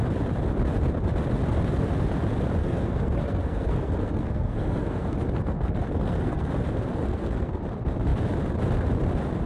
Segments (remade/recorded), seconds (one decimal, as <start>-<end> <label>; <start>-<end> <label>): 0.0-2.6 recorded; 2.6-6.5 remade; 6.5-7.0 recorded; 7.0-7.6 remade; 7.6-9.5 recorded